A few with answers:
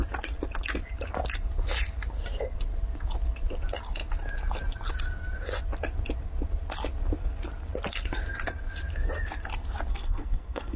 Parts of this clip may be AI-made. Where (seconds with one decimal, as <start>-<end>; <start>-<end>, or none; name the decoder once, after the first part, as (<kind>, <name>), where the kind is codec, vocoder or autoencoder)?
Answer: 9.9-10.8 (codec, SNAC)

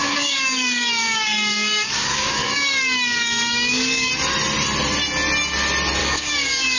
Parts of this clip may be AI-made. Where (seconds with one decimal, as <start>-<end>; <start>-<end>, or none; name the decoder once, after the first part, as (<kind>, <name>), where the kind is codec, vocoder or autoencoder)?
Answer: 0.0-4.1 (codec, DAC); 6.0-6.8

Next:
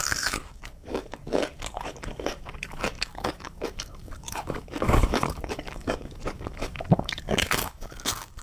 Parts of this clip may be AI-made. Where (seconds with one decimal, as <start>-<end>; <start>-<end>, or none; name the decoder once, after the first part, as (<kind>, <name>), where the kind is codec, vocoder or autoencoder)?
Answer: 0.0-8.4 (codec, DAC)